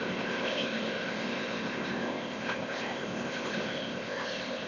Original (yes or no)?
no